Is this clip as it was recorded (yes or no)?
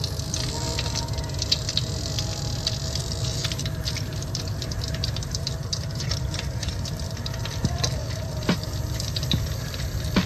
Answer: no